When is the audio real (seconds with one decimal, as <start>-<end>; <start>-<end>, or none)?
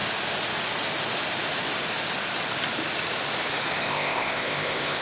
0.0-3.8